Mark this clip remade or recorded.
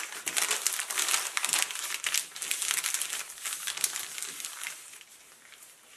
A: recorded